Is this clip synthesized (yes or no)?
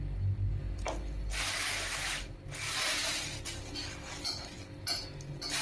no